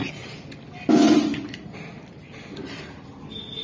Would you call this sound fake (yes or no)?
no